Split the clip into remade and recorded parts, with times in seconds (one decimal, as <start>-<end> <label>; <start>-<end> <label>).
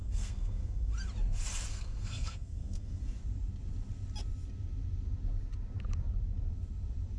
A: 0.0-0.9 remade; 0.9-1.7 recorded; 1.7-3.0 remade; 3.0-7.2 recorded